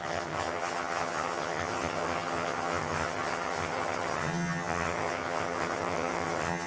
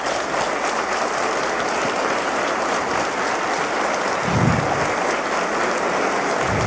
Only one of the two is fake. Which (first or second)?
first